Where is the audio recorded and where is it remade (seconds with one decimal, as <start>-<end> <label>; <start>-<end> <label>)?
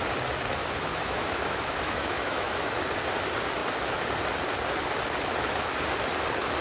0.0-0.6 recorded; 0.6-2.7 remade; 2.7-6.6 recorded